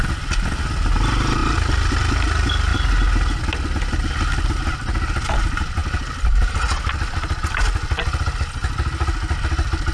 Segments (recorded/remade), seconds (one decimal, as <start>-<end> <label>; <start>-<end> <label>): 0.0-9.9 recorded